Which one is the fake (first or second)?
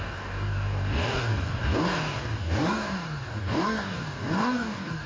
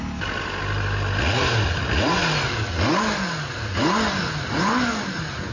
first